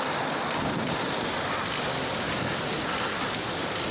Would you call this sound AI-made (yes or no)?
no